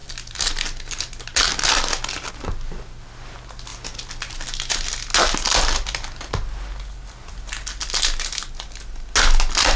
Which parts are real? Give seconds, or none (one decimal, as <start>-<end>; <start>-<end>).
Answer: 0.0-9.8